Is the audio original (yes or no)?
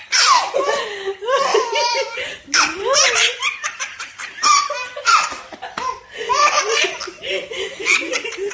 no